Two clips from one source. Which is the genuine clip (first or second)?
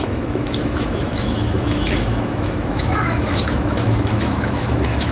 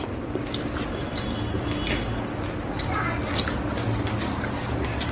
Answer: second